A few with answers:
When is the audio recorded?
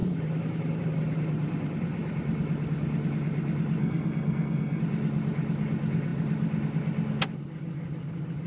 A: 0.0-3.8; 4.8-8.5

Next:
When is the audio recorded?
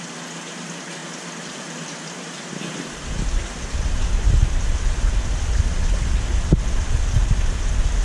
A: 0.0-8.0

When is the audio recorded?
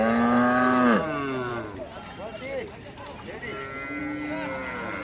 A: 0.0-5.0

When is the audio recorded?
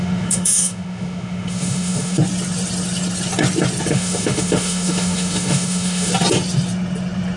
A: 2.2-3.9; 6.1-7.4